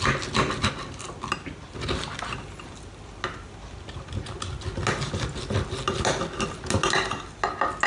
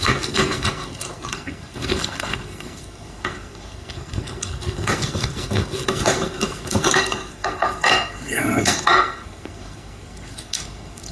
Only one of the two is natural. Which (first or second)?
first